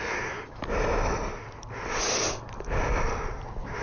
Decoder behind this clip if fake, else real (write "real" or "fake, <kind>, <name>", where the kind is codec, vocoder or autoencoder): real